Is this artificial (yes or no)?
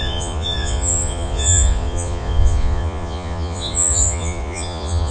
yes